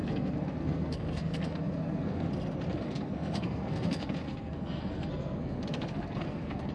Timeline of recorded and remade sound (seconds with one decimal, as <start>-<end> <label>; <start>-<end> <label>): 0.0-2.3 remade; 2.3-2.7 recorded; 2.7-6.7 remade